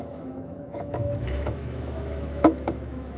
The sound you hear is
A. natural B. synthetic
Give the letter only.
B